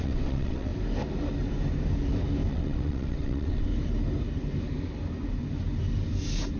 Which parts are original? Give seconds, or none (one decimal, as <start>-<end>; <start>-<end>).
0.7-2.5; 3.7-6.6